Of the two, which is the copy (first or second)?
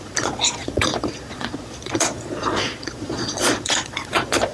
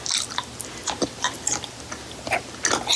first